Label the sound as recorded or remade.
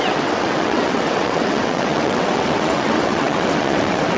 remade